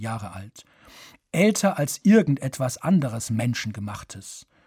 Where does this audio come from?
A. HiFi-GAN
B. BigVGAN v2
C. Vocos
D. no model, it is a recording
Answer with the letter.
D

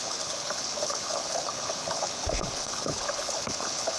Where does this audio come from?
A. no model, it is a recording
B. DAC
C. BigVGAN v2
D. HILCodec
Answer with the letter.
D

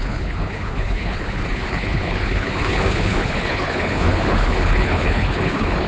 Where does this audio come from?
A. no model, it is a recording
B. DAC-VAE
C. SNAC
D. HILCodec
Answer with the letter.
D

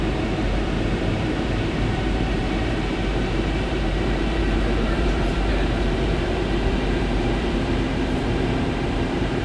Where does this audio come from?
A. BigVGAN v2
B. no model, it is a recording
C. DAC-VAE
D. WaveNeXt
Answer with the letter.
A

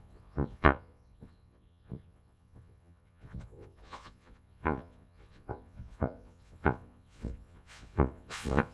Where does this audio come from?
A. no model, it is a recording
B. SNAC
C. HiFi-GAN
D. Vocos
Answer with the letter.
D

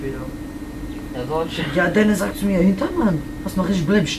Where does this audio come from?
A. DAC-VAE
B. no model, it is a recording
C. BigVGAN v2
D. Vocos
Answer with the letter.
B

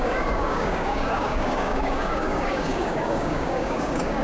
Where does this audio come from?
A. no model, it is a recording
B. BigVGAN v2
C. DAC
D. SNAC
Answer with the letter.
C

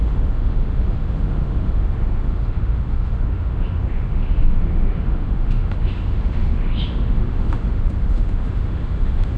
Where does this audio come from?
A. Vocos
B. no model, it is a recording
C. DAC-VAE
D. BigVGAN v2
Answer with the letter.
C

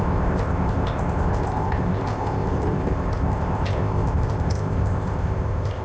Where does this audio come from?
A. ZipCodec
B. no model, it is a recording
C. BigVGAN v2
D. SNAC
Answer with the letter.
A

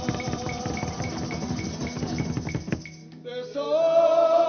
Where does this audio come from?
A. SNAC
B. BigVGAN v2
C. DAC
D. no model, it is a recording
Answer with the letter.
D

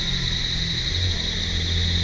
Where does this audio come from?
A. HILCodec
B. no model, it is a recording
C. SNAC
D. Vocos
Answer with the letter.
B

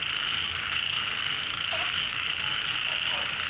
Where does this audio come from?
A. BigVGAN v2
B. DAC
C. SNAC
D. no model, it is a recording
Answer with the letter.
D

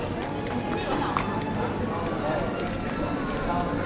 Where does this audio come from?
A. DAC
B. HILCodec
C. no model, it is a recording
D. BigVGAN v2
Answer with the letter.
C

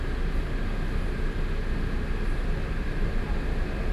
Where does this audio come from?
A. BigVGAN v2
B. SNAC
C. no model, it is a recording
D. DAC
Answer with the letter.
C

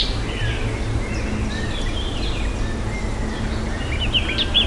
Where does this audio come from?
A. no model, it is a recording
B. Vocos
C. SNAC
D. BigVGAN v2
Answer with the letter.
A